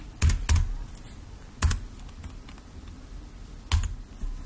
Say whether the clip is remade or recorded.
recorded